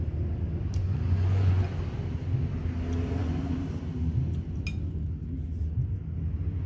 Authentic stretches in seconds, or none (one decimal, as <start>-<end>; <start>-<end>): 0.0-0.8; 1.6-6.7